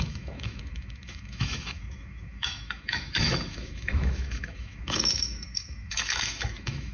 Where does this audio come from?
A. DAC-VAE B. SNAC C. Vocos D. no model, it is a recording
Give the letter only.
A